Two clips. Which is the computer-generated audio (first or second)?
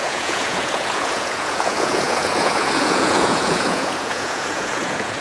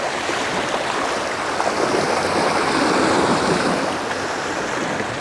first